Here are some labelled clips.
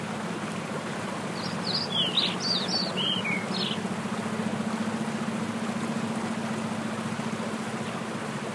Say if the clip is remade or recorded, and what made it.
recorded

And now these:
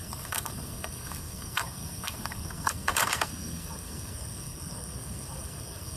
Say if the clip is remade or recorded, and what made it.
remade, codec, SNAC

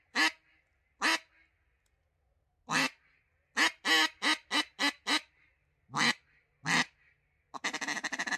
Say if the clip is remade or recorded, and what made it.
recorded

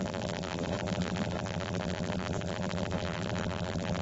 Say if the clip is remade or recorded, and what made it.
remade, vocoder, BigVGAN v2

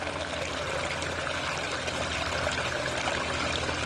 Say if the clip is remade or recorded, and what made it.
recorded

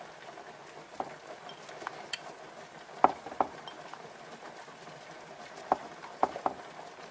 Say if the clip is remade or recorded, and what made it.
recorded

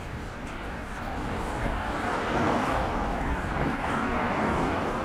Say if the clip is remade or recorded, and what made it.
remade, codec, DAC